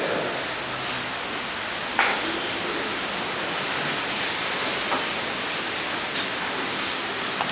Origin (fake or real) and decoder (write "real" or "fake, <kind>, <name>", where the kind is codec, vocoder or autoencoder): real